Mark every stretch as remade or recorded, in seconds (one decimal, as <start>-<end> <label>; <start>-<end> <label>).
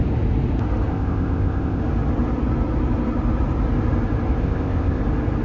0.0-0.9 recorded; 0.9-1.8 remade; 1.8-4.4 recorded; 4.4-5.0 remade; 5.0-5.4 recorded